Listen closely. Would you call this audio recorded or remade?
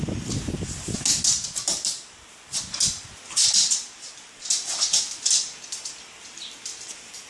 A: recorded